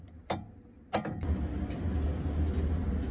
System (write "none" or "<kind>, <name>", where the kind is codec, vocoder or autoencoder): none